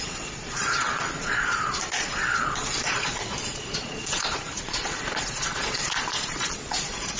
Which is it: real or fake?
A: fake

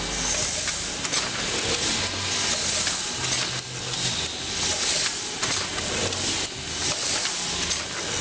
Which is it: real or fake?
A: real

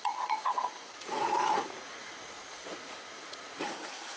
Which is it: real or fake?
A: fake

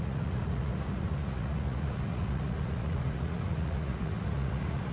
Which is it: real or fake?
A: fake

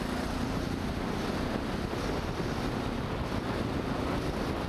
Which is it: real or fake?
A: real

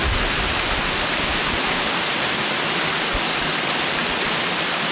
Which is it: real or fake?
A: real